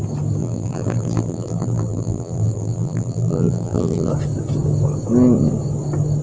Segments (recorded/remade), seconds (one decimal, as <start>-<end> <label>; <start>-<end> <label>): 0.0-0.4 recorded; 0.4-4.1 remade; 4.1-6.2 recorded